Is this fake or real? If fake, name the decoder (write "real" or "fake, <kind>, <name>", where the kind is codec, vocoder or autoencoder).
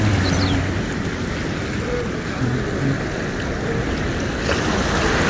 real